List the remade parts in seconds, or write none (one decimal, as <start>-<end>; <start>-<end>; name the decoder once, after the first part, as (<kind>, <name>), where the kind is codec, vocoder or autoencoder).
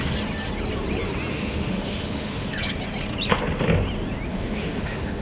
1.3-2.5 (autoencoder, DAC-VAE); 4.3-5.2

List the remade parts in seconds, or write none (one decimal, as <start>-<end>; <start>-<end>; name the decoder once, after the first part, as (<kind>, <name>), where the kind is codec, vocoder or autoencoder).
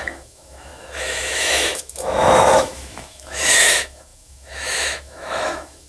0.0-5.9 (autoencoder, DAC-VAE)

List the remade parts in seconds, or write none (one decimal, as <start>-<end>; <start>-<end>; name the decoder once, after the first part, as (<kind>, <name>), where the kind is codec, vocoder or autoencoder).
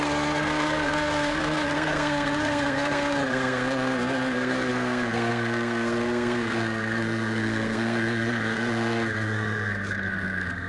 0.0-10.7 (codec, SNAC)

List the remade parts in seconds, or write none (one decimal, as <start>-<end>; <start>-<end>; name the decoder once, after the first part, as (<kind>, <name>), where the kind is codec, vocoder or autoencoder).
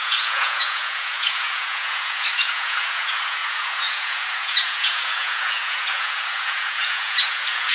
0.0-7.7 (vocoder, Vocos)